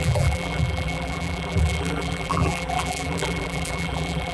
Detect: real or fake fake